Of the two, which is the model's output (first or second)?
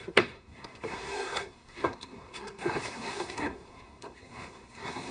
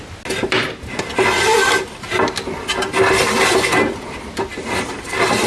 first